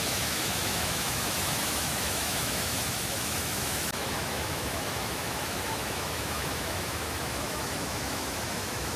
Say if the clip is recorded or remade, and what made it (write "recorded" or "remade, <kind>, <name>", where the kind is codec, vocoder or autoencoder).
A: remade, autoencoder, DAC-VAE